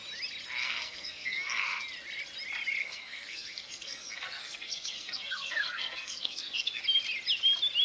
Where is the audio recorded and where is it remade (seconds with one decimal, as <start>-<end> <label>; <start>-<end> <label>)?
0.0-0.6 recorded; 0.6-1.8 remade; 1.8-2.8 recorded; 2.8-6.8 remade; 6.8-7.8 recorded